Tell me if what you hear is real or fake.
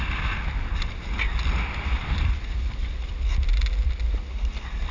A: real